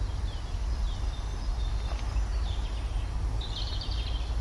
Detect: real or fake real